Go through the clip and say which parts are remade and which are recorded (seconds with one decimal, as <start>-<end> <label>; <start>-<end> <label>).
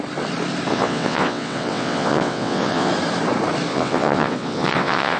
0.0-0.7 recorded; 0.7-2.9 remade; 2.9-3.7 recorded; 3.7-5.2 remade